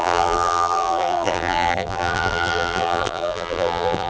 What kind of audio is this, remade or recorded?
remade